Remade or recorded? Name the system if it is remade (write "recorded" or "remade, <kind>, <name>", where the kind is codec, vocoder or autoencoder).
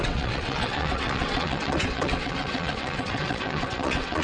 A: remade, vocoder, WaveNeXt